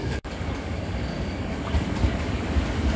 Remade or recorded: remade